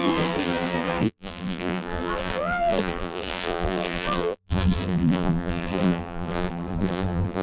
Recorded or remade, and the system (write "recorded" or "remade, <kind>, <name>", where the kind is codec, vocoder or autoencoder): remade, vocoder, BigVGAN v2